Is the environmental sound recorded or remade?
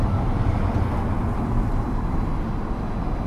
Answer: recorded